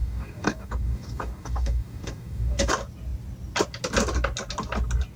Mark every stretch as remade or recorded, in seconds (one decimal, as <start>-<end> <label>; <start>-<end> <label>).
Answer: 0.0-2.7 remade; 2.7-5.2 recorded